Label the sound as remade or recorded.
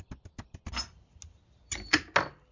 recorded